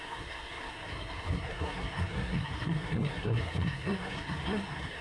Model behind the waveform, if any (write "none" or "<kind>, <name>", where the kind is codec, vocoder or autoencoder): codec, SNAC